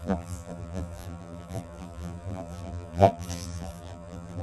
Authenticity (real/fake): fake